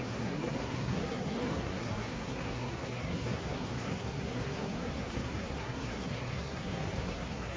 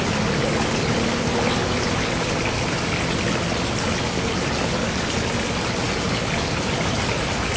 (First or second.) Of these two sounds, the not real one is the first